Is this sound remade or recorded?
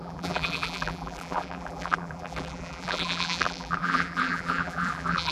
remade